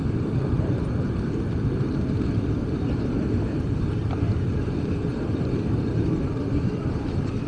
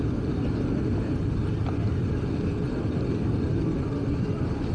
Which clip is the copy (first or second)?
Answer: first